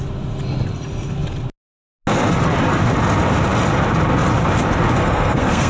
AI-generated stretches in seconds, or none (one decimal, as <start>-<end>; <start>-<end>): 5.0-5.7